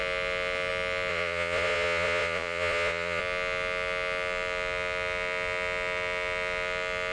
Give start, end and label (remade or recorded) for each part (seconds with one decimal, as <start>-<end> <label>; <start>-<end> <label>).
0.0-1.1 recorded; 1.1-3.2 remade; 3.2-7.1 recorded